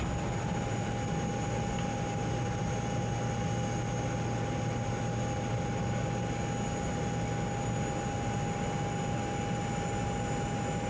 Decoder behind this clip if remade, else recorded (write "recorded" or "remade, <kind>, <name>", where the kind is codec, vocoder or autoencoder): recorded